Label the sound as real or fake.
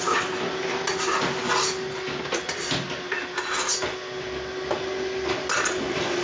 real